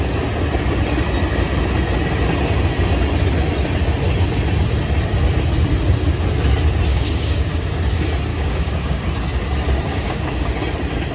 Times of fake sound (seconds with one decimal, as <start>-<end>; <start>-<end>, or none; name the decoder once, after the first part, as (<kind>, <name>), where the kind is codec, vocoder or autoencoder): 6.9-7.7 (codec, DAC); 8.3-9.1; 9.9-10.5